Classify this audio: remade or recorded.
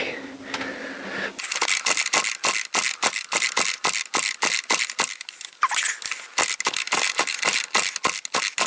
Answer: recorded